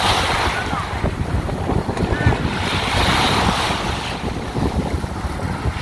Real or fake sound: real